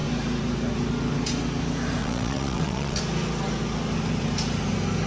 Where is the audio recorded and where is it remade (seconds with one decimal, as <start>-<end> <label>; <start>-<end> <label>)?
0.0-2.0 recorded; 2.0-3.0 remade; 3.0-5.1 recorded